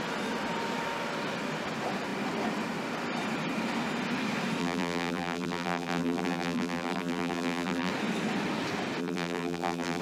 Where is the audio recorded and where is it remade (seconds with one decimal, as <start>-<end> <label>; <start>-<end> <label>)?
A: 0.0-4.6 recorded; 4.6-7.9 remade; 7.9-9.0 recorded; 9.0-10.0 remade